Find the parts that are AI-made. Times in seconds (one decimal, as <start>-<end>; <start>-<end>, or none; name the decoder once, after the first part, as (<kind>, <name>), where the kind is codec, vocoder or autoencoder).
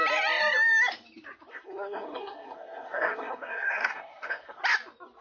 1.5-4.6 (codec, SNAC)